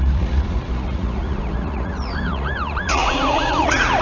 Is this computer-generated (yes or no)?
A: yes